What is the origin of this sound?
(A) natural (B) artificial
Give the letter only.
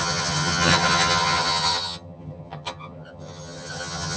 B